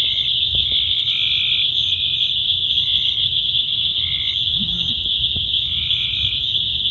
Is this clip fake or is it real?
fake